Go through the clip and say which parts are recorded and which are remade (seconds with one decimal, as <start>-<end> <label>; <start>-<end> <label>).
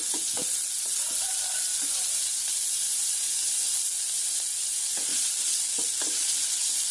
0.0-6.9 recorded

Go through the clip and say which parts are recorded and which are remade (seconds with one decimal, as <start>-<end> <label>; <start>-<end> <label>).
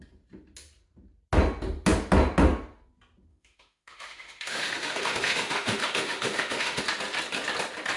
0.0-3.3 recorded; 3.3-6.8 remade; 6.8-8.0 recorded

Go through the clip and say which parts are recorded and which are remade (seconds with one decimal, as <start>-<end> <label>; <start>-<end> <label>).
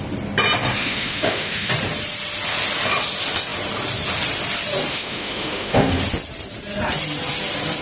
0.0-0.8 recorded; 0.8-1.7 remade; 1.7-4.9 recorded; 4.9-6.0 remade; 6.0-7.8 recorded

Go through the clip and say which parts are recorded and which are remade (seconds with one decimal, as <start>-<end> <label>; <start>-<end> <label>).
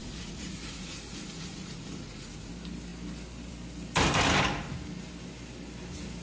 0.0-2.5 remade; 2.5-6.2 recorded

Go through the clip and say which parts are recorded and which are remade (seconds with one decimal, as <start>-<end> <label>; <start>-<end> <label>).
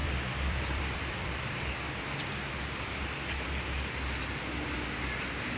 0.0-1.7 remade; 1.7-5.6 recorded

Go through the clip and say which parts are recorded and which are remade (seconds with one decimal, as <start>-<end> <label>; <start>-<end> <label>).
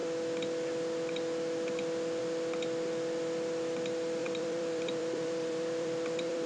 0.0-4.2 recorded; 4.2-6.5 remade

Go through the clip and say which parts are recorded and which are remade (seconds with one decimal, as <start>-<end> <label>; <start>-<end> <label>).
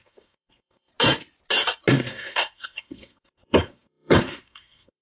0.0-0.9 remade; 0.9-1.9 recorded; 1.9-5.0 remade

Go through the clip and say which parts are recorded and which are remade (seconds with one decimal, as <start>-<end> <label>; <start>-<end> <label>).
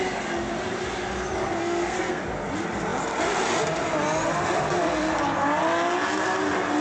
0.0-1.4 recorded; 1.4-2.2 remade; 2.2-6.8 recorded